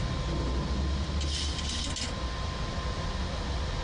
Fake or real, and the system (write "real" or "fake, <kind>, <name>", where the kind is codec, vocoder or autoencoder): real